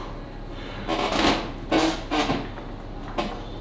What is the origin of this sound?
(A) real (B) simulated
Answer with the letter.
A